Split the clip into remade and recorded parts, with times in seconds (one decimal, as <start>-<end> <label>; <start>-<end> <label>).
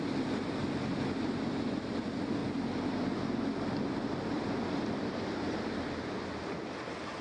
0.0-7.2 recorded